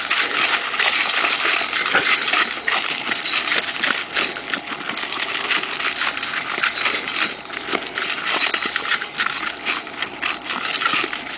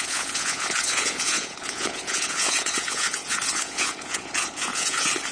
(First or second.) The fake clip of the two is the second